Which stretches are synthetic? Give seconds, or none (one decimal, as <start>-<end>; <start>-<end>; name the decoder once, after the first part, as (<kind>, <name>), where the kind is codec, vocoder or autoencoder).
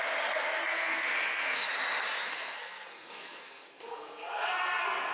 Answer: 0.7-1.7 (codec, SNAC); 2.2-5.1